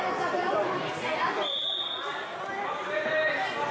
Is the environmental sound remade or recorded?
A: recorded